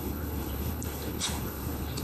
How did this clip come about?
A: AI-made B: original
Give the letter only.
A